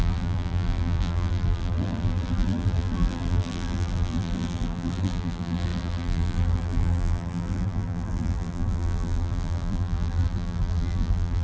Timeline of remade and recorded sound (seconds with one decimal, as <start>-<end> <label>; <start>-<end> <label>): 0.0-11.4 remade